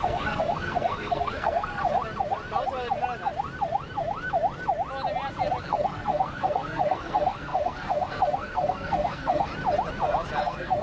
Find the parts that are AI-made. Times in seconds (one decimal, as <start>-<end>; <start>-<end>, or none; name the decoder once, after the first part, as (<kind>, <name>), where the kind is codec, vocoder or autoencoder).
0.0-1.8 (codec, SNAC); 5.6-9.5; 10.4-10.8